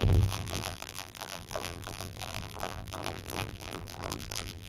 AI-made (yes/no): yes